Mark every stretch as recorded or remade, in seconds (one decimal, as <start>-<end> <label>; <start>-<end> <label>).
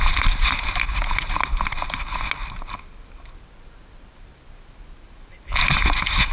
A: 0.0-2.4 recorded; 2.4-5.6 remade; 5.6-6.3 recorded